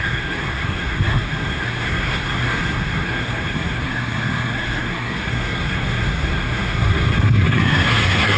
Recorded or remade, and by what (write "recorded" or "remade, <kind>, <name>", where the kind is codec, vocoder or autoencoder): remade, codec, SNAC